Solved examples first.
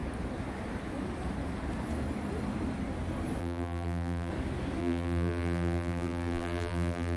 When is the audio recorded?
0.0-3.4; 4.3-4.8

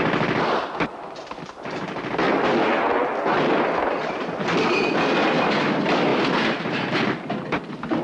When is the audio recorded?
0.0-8.0

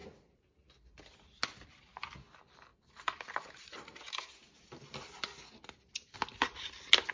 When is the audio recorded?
0.0-2.7; 4.0-7.1

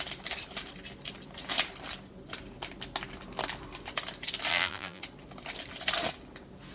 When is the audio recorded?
0.0-4.5; 5.0-6.7

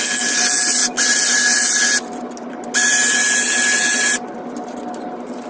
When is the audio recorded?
0.0-5.5

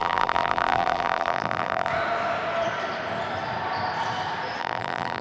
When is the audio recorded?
1.9-4.6